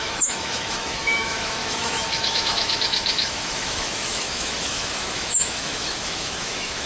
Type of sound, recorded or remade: remade